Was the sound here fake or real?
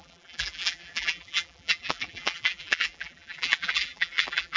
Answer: fake